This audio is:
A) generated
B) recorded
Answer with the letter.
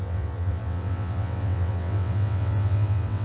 A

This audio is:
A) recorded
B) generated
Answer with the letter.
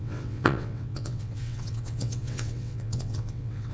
B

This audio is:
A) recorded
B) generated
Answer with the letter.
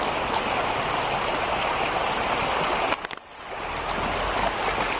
A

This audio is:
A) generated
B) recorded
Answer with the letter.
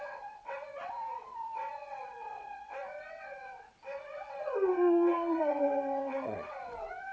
A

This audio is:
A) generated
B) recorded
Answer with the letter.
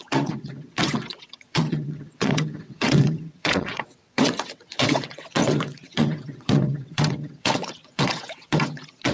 A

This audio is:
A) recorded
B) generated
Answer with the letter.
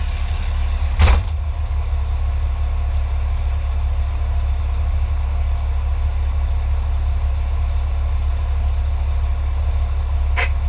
A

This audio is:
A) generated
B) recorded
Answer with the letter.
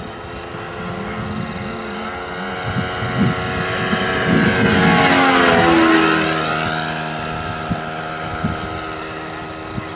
B